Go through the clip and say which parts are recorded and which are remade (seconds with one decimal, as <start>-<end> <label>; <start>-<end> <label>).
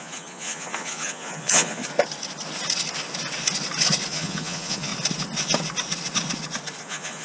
0.0-1.8 remade; 1.8-4.1 recorded; 4.1-4.9 remade; 4.9-6.8 recorded; 6.8-7.2 remade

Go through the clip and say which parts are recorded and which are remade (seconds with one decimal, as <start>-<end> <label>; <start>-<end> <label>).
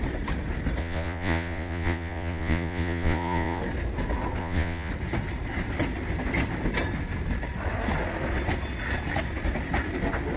0.0-0.8 recorded; 0.8-3.6 remade; 3.6-4.4 recorded; 4.4-4.9 remade; 4.9-10.4 recorded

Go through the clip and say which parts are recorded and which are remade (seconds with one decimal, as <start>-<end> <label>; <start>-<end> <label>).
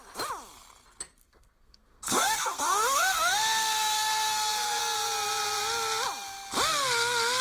0.0-1.2 recorded; 1.2-4.8 remade; 4.8-7.4 recorded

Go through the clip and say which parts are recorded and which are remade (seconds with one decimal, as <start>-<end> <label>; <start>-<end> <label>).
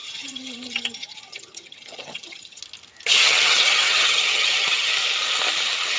0.0-2.6 remade; 2.6-3.2 recorded; 3.2-4.9 remade; 4.9-6.0 recorded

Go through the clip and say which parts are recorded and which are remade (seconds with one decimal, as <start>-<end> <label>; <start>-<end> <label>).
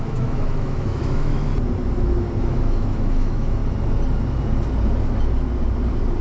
0.0-1.5 remade; 1.5-2.4 recorded; 2.4-3.6 remade; 3.6-6.2 recorded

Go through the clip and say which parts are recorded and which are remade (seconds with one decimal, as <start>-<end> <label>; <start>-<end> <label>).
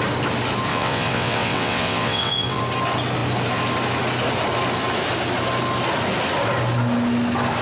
0.0-0.7 recorded; 0.7-2.6 remade; 2.6-7.6 recorded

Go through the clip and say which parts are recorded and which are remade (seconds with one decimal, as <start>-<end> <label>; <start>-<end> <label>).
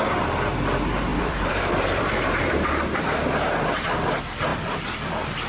0.0-1.1 recorded; 1.1-2.7 remade; 2.7-4.5 recorded; 4.5-5.5 remade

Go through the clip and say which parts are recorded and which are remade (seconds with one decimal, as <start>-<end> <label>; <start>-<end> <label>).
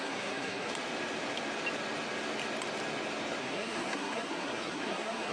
0.0-0.7 remade; 0.7-3.4 recorded; 3.4-5.3 remade